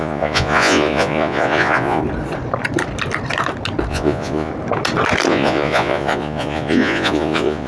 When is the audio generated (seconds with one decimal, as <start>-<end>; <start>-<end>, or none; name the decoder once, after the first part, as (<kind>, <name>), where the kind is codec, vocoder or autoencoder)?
0.0-2.0 (vocoder, Vocos); 3.9-4.5; 5.3-7.7